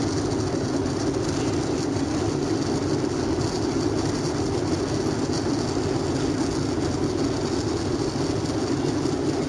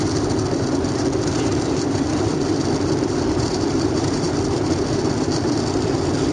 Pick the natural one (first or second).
first